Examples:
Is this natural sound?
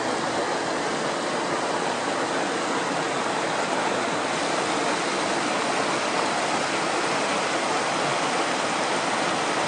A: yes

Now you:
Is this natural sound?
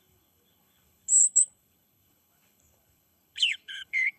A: no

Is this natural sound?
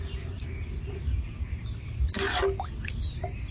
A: yes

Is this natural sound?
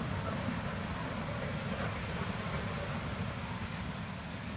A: yes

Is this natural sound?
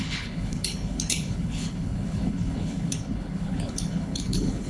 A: no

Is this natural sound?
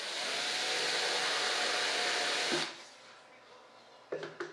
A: yes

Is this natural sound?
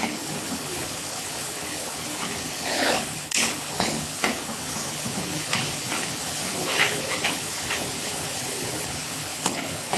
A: no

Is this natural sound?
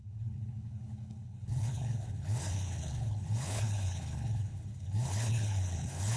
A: no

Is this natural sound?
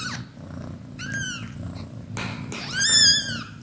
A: yes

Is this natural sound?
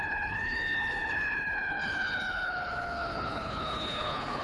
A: no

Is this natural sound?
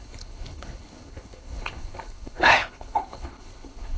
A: no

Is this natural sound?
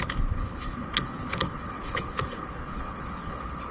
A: no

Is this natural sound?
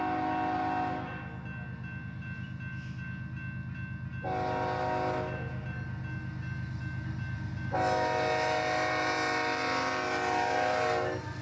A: yes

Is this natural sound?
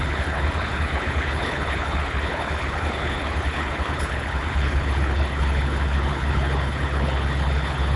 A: no